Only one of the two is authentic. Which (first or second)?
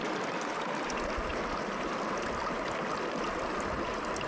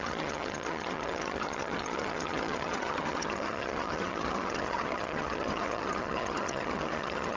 first